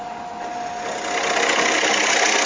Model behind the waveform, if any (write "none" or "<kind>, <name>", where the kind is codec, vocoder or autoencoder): none